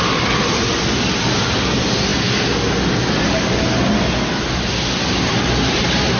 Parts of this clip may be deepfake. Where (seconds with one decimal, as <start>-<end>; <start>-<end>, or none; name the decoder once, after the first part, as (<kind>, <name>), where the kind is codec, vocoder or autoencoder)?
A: none